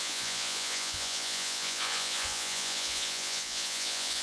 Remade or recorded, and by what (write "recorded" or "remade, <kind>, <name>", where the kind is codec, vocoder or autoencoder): remade, vocoder, Vocos